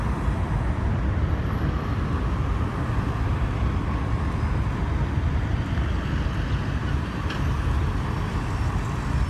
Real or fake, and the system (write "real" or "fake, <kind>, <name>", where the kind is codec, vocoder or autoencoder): real